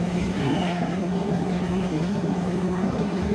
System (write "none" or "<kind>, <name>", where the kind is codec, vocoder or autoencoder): codec, SNAC